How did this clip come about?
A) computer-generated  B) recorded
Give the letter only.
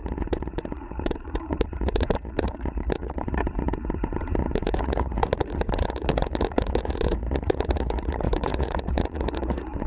A